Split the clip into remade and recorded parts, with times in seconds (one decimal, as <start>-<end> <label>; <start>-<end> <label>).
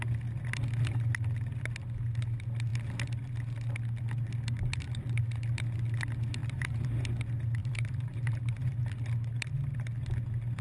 0.0-6.4 recorded; 6.4-7.0 remade; 7.0-7.6 recorded; 7.6-8.8 remade; 8.8-10.6 recorded